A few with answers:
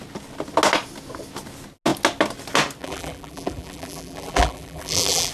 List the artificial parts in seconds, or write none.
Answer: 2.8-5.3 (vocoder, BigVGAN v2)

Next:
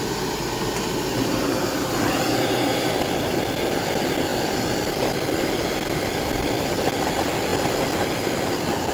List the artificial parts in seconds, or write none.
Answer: none

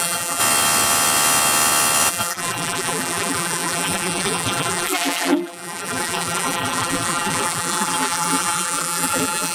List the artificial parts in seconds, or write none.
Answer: 0.0-0.4 (vocoder, BigVGAN v2); 2.1-9.5